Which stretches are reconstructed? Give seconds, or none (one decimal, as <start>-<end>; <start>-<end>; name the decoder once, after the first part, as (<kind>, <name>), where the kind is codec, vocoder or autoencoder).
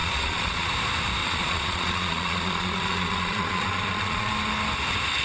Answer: 0.0-0.7 (vocoder, Vocos); 1.2-4.3